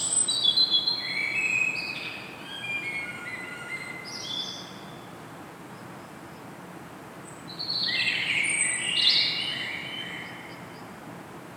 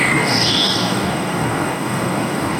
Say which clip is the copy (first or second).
second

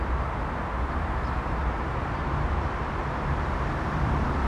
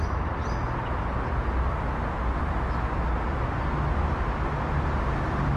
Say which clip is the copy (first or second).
first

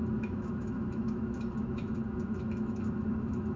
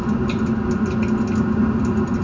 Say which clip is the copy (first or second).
first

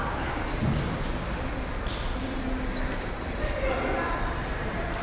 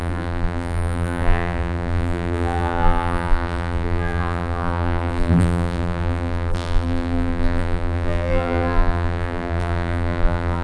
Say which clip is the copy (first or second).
second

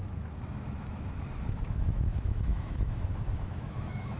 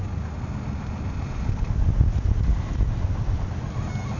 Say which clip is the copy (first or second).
first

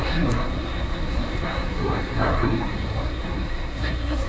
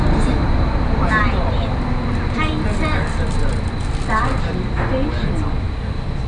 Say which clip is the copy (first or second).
first